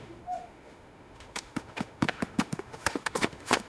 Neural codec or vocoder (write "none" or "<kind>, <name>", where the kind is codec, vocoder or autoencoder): autoencoder, DAC-VAE